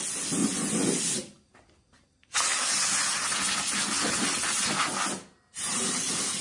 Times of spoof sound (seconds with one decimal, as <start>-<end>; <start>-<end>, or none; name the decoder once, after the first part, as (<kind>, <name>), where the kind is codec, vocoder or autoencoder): 0.4-1.0 (vocoder, Vocos)